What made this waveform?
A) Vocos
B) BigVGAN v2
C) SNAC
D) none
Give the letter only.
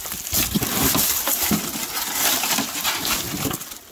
D